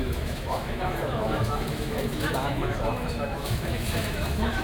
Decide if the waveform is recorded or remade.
remade